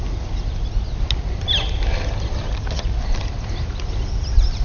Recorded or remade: recorded